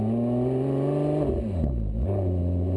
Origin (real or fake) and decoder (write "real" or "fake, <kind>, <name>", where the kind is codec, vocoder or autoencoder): real